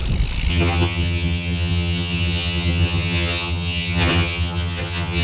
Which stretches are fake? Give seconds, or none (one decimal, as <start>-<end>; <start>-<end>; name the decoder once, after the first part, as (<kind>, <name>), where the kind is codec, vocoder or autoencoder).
0.5-5.2 (vocoder, HiFi-GAN)